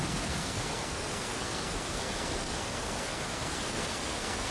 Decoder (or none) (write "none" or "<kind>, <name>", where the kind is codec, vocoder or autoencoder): codec, SNAC